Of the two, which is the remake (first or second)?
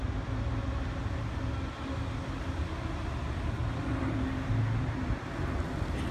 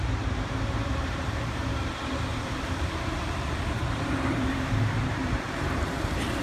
second